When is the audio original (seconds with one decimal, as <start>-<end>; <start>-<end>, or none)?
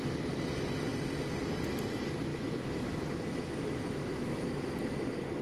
0.0-2.3; 4.5-5.4